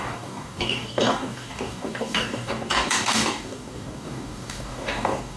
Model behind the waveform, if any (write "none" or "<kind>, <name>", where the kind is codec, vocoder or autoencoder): codec, DAC